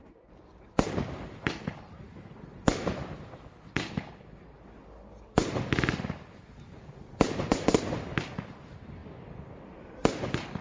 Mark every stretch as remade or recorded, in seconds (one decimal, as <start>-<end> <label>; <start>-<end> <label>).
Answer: 0.0-10.6 recorded